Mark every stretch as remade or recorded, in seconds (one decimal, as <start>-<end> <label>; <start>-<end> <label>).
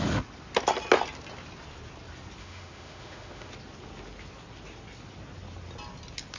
0.0-2.4 recorded; 2.4-3.5 remade; 3.5-6.4 recorded